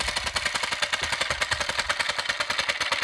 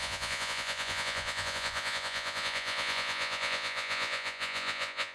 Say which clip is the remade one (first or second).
second